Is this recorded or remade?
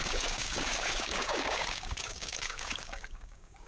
remade